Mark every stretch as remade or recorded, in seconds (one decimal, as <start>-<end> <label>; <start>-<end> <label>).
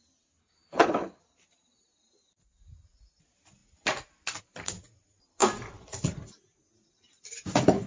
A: 0.0-0.4 recorded; 0.4-1.2 remade; 1.2-7.9 recorded